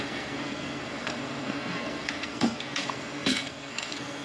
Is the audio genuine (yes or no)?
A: no